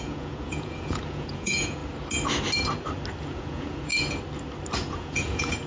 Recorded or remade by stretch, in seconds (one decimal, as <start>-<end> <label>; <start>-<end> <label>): 0.0-1.8 remade; 1.8-3.2 recorded; 3.2-3.9 remade; 3.9-4.8 recorded; 4.8-5.7 remade